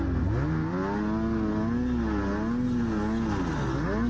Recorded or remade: recorded